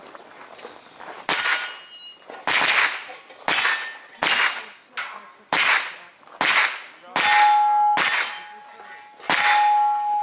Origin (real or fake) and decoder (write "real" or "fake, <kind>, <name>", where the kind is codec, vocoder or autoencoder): real